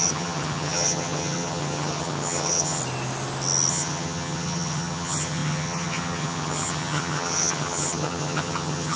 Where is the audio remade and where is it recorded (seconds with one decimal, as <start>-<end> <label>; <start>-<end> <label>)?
0.0-2.8 remade; 2.8-3.7 recorded; 3.7-9.0 remade